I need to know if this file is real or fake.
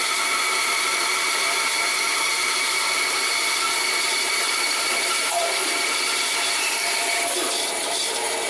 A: fake